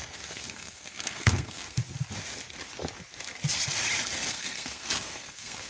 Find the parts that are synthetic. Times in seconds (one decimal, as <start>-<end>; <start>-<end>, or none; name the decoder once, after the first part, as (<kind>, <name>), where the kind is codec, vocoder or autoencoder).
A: 0.0-1.8 (codec, SNAC); 4.3-5.7